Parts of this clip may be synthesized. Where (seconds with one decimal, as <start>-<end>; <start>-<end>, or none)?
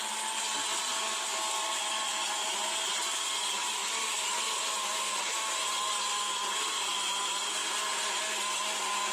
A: 7.6-8.2